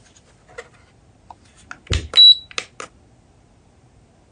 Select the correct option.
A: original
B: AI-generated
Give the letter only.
A